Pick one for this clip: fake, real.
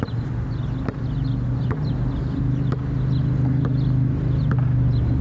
real